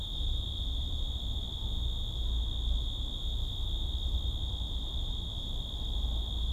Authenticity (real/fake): real